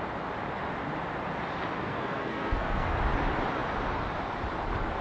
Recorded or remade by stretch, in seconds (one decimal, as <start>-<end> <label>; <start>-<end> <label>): 0.0-1.8 recorded; 1.8-3.0 remade; 3.0-5.0 recorded